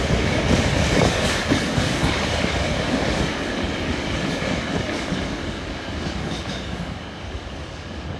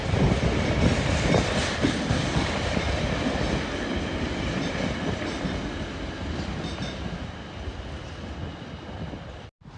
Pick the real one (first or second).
second